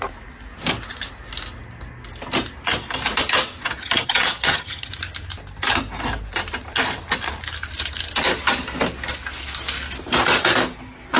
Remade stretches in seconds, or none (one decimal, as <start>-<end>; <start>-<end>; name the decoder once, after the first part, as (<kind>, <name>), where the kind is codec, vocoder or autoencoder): 3.8-4.9 (vocoder, HiFi-GAN)